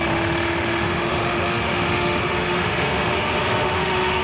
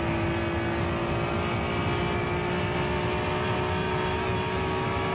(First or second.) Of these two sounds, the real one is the second